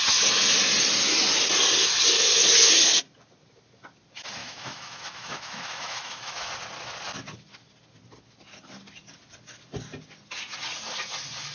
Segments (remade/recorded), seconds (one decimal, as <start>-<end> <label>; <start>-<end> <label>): 0.0-4.4 recorded; 4.4-6.5 remade; 6.5-11.5 recorded

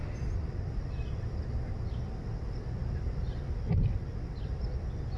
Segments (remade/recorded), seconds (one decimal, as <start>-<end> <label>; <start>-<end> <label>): 0.0-5.2 recorded

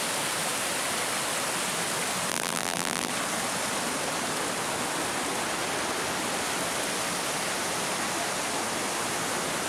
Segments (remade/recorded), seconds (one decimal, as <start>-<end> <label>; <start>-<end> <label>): 0.0-2.3 recorded; 2.3-3.1 remade; 3.1-9.7 recorded

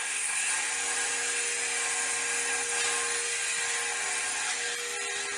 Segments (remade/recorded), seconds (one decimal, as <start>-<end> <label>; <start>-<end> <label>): 0.0-0.5 remade; 0.5-5.4 recorded

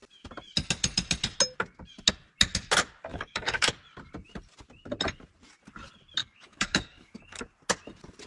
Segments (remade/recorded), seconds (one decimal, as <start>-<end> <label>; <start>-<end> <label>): 0.0-3.1 recorded; 3.1-3.7 remade; 3.7-6.2 recorded; 6.2-7.4 remade; 7.4-8.3 recorded

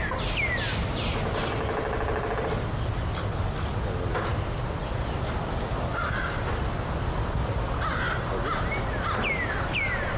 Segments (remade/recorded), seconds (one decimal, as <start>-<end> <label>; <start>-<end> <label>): 0.0-10.2 recorded

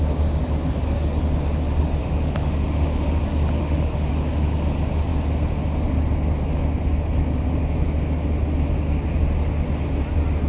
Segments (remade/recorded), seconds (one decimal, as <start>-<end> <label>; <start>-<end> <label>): 0.0-2.0 recorded; 2.0-3.2 remade; 3.2-3.6 recorded; 3.6-4.1 remade; 4.1-10.5 recorded